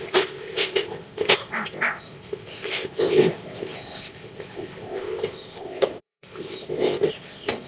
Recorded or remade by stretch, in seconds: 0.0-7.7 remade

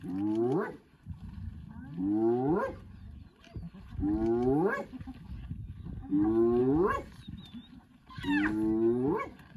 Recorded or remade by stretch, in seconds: 0.0-6.6 recorded; 6.6-7.2 remade; 7.2-9.6 recorded

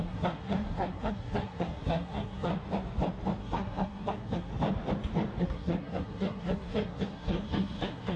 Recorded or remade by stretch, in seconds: 0.0-2.5 remade; 2.5-3.4 recorded; 3.4-4.5 remade; 4.5-5.4 recorded; 5.4-8.2 remade

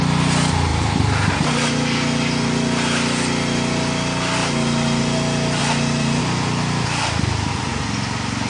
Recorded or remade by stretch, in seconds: 0.0-0.7 recorded; 0.7-1.5 remade; 1.5-5.6 recorded; 5.6-6.2 remade; 6.2-8.5 recorded

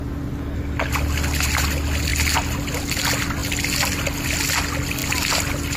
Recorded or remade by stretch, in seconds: 0.0-5.8 recorded

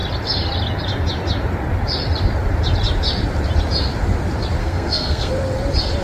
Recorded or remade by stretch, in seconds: 0.0-4.6 recorded; 4.6-5.3 remade; 5.3-6.0 recorded